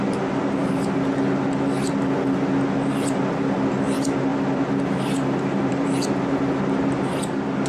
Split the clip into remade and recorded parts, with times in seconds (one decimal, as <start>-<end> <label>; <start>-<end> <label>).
0.0-7.7 recorded